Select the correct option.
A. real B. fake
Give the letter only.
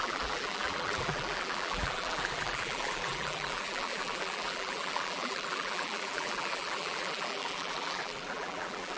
B